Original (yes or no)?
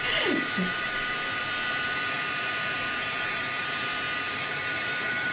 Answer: no